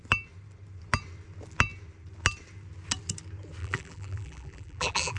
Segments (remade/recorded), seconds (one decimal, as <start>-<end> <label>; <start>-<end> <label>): 0.0-3.6 recorded; 3.6-5.2 remade